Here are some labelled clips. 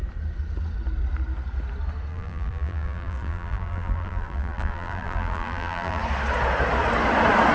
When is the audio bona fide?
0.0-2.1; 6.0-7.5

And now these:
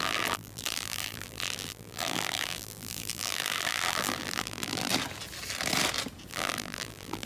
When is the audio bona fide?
4.9-6.3

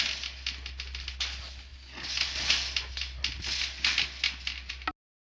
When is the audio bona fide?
0.0-5.2

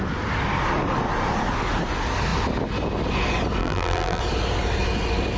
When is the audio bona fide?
0.0-3.6; 4.2-5.4

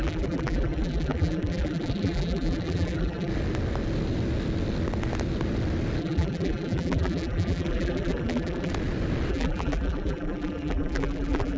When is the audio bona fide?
3.3-6.0; 8.7-9.3